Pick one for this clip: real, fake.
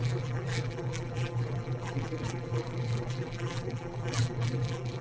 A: fake